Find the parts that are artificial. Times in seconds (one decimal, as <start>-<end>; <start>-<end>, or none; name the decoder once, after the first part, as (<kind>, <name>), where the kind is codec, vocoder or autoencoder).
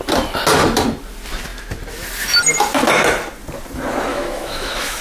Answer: 4.1-5.0 (autoencoder, DAC-VAE)